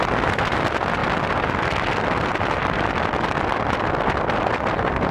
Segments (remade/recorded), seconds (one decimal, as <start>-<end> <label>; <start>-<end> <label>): 0.0-5.1 recorded